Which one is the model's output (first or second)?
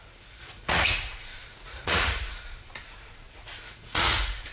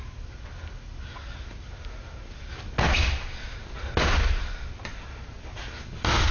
first